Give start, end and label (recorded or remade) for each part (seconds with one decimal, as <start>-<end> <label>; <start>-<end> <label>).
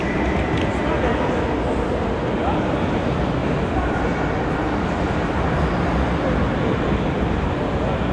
0.0-8.1 recorded